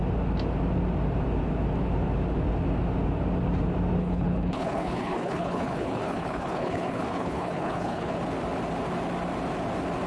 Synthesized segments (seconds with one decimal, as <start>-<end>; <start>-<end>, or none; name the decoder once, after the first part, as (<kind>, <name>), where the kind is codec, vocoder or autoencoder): 4.0-8.2 (codec, HILCodec)